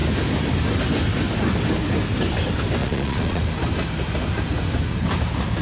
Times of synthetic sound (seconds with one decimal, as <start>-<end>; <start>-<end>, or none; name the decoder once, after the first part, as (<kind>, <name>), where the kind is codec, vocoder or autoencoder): 2.8-3.4 (vocoder, Vocos)